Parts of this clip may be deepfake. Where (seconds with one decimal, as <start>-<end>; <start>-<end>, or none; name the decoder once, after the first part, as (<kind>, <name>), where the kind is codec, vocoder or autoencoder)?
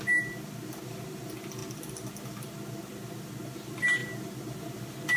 none